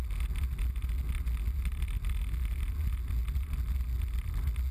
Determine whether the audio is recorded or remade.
recorded